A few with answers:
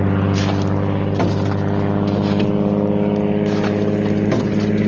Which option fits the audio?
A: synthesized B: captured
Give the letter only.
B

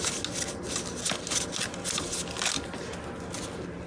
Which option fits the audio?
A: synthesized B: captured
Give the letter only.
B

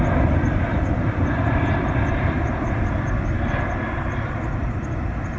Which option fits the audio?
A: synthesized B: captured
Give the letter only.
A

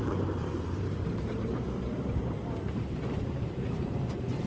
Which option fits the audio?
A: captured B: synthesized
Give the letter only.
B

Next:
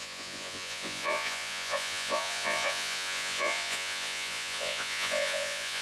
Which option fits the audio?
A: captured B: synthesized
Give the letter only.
B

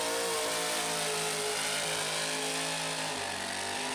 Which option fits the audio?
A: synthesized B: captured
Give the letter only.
B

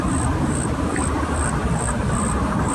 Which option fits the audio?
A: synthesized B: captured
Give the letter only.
B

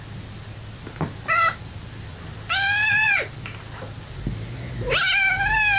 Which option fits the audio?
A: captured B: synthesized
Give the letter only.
A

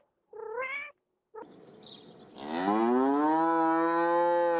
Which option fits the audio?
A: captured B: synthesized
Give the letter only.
A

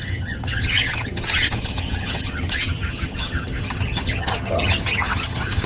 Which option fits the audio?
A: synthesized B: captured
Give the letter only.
A